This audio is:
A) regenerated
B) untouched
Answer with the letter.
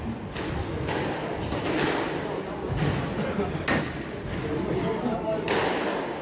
B